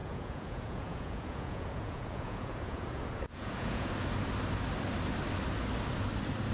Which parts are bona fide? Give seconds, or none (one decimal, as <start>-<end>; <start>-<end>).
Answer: 3.9-6.5

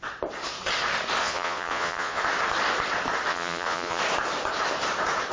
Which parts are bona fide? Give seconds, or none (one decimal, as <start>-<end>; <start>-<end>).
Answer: 0.0-1.2; 2.2-3.3; 4.0-5.3

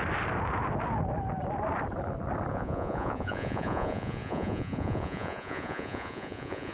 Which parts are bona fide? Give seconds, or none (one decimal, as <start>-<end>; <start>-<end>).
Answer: 0.0-2.5

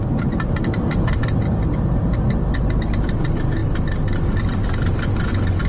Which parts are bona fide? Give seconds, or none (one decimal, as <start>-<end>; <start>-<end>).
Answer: 0.0-5.7

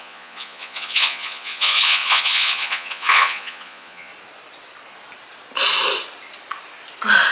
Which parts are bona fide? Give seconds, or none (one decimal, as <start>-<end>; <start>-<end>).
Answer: 4.1-7.3

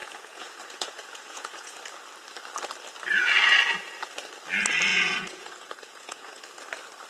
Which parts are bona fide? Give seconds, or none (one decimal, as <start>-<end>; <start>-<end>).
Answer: 1.7-4.9; 6.4-7.1